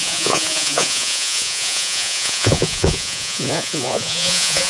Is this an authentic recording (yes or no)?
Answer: no